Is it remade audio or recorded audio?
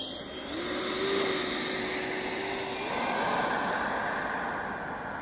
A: recorded